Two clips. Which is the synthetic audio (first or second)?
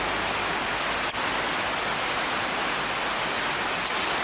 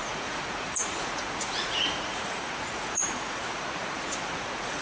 second